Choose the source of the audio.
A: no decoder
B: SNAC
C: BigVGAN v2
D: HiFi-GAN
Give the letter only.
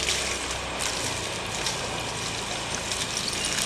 A